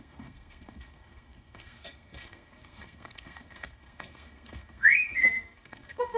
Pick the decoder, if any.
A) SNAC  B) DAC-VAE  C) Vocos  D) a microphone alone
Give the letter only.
A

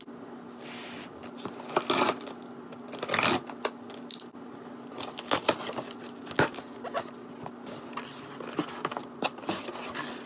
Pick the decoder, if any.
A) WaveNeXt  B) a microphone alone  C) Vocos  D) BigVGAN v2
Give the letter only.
B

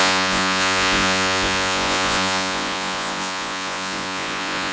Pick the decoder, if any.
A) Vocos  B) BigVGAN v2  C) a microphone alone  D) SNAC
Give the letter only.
A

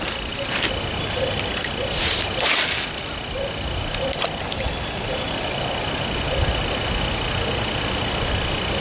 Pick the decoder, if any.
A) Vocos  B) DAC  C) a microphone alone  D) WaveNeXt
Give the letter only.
C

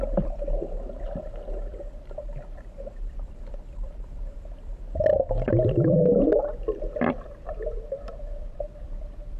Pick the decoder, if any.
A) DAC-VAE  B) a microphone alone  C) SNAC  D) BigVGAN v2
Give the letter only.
D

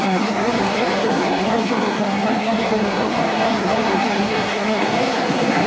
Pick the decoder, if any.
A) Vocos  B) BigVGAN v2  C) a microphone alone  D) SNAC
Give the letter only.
D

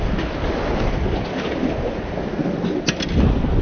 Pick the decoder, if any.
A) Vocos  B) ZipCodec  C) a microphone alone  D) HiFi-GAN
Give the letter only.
C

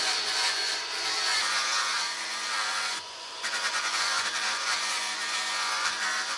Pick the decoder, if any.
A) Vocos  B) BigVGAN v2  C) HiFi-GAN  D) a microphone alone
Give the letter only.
A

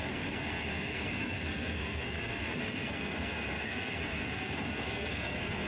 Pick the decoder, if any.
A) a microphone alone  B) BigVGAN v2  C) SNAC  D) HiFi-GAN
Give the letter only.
C